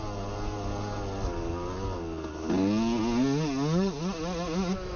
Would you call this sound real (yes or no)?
yes